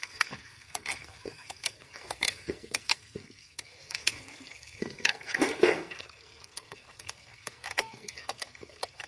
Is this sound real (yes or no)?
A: no